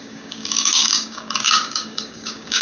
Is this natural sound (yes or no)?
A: no